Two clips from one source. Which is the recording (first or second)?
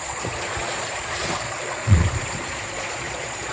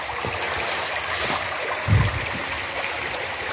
second